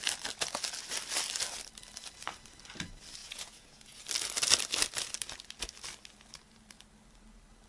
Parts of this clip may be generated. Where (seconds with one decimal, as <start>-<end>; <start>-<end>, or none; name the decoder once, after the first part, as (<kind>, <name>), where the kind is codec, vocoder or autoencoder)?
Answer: 3.2-4.0 (vocoder, Vocos)